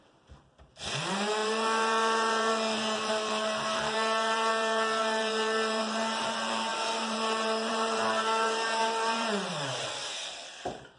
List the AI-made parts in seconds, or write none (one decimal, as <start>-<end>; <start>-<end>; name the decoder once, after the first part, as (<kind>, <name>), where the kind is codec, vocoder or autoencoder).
0.0-11.0 (vocoder, BigVGAN v2)